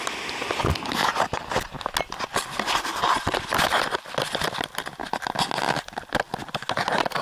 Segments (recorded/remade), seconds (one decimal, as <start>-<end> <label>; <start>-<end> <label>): 0.0-7.2 recorded

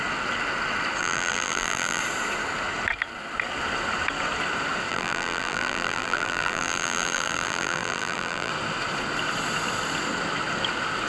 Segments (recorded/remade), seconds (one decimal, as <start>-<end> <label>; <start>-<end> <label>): 0.0-1.0 recorded; 1.0-2.0 remade; 2.0-4.9 recorded; 4.9-8.5 remade; 8.5-11.1 recorded

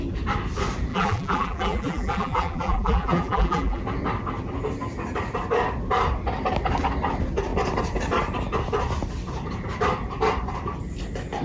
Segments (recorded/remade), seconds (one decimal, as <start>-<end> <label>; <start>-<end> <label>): 0.0-0.9 recorded; 0.9-3.8 remade; 3.8-11.4 recorded

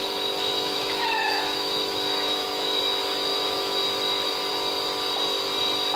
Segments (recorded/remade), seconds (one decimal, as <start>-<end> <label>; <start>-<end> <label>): 0.0-0.5 recorded; 0.5-2.8 remade; 2.8-3.3 recorded; 3.3-3.8 remade; 3.8-6.0 recorded

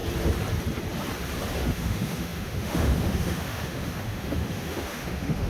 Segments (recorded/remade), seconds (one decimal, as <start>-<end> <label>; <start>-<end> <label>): 0.0-1.6 recorded; 1.6-5.5 remade